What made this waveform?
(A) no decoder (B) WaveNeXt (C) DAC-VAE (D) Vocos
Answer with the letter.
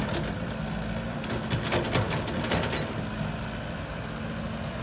A